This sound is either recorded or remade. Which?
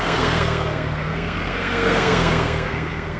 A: remade